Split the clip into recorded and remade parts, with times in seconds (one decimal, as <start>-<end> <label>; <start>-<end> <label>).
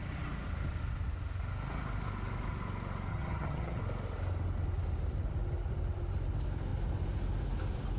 0.0-3.1 recorded; 3.1-3.8 remade; 3.8-8.0 recorded